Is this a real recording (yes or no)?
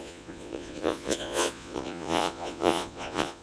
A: no